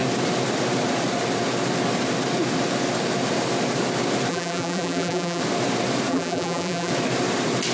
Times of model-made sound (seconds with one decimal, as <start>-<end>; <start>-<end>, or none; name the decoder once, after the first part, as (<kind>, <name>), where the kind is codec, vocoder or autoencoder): 4.3-5.4 (vocoder, BigVGAN v2); 6.1-6.9